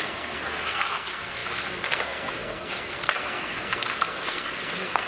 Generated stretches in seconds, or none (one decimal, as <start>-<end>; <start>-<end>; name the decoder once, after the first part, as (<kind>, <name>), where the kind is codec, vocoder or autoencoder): 0.0-5.1 (codec, SNAC)